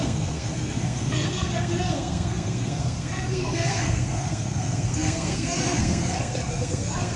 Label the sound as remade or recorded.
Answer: remade